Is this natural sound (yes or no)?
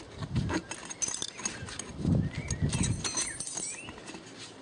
yes